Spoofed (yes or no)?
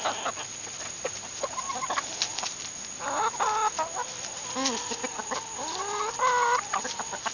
no